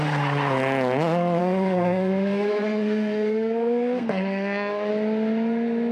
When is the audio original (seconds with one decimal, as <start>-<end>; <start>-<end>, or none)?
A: 0.0-1.4; 4.9-5.9